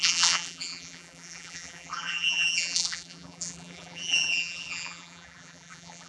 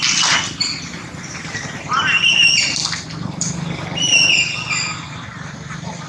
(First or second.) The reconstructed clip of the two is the first